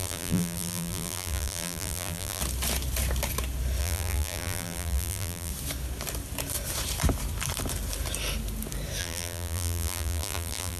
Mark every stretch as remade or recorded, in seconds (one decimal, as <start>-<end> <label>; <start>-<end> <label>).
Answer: 0.0-2.4 remade; 2.4-3.8 recorded; 3.8-5.5 remade; 5.5-9.0 recorded; 9.0-10.8 remade